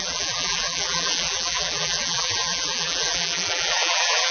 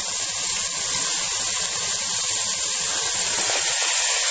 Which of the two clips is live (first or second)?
second